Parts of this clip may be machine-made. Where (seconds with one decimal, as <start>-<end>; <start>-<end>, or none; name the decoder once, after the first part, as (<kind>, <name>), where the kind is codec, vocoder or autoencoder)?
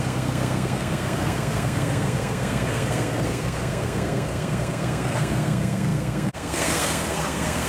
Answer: 0.0-7.7 (codec, SNAC)